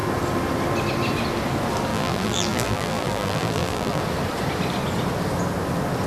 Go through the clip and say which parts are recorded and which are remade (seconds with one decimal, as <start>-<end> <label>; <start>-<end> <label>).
0.0-1.9 recorded; 1.9-4.0 remade; 4.0-6.1 recorded